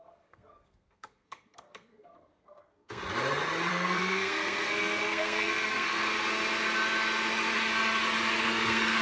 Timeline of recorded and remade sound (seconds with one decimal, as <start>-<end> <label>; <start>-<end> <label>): 0.0-3.0 remade; 3.0-3.7 recorded; 3.7-6.0 remade; 6.0-8.4 recorded; 8.4-9.0 remade